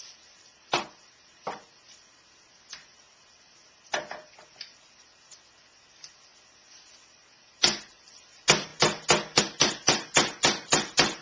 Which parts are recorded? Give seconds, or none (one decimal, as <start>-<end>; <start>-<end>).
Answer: 6.3-7.9; 8.7-9.4